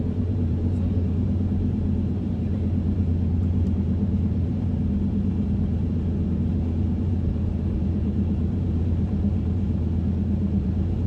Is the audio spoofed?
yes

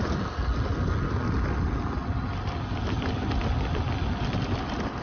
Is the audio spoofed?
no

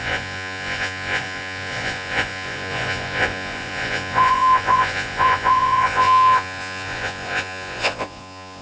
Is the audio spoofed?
yes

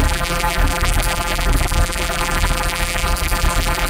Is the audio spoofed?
yes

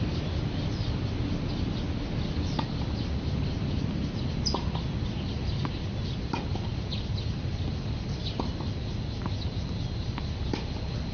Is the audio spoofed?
no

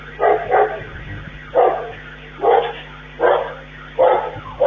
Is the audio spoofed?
no